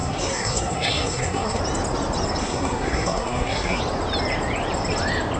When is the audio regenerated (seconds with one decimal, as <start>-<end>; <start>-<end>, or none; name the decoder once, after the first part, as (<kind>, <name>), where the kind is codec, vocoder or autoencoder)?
0.0-1.6 (codec, SNAC); 2.4-3.8